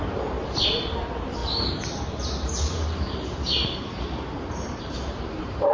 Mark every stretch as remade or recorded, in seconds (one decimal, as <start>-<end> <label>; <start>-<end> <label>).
0.0-5.7 remade